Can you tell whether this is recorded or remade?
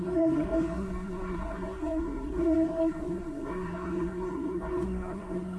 remade